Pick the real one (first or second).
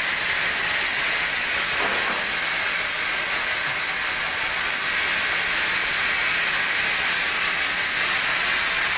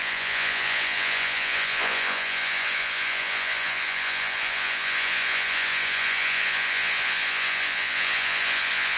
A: first